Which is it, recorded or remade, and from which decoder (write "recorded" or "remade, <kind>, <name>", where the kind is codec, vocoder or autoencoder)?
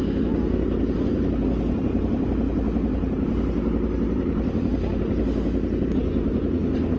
recorded